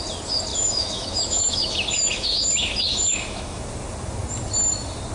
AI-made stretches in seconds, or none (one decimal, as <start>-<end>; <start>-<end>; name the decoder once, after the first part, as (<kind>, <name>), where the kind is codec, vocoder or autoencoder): 0.5-3.6 (autoencoder, DAC-VAE)